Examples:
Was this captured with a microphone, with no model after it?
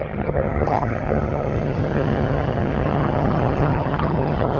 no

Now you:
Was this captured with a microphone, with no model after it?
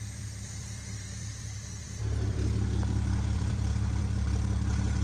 no